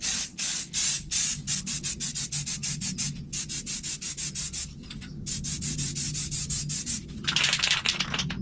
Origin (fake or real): real